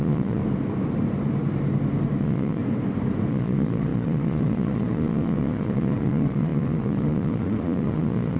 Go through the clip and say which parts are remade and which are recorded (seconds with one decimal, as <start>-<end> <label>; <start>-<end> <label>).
0.0-0.4 remade; 0.4-2.2 recorded; 2.2-2.6 remade; 2.6-3.3 recorded; 3.3-8.4 remade

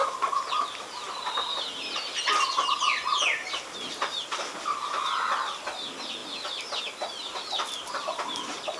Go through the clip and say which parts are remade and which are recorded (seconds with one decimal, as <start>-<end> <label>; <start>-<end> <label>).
0.0-8.8 recorded

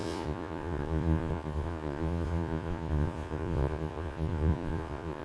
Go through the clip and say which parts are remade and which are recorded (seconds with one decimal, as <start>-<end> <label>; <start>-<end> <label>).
0.0-5.2 remade

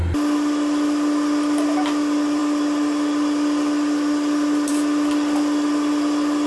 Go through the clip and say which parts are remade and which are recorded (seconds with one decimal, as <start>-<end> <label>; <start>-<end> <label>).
0.0-6.5 recorded

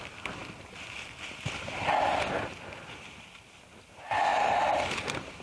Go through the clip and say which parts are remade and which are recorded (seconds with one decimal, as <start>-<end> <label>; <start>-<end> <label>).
0.0-5.4 recorded